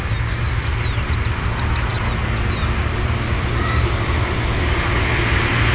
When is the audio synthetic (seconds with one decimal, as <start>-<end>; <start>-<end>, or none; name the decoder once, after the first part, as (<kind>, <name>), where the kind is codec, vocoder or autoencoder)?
none